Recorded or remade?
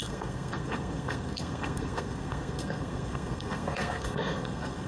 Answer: remade